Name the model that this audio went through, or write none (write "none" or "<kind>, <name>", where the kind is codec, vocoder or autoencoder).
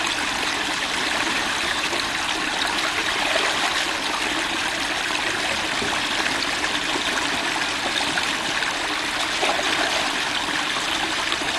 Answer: none